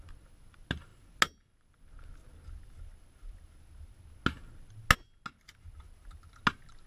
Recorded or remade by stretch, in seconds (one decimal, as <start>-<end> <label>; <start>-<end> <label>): 0.0-6.9 recorded